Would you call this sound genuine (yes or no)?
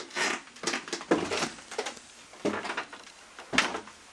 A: yes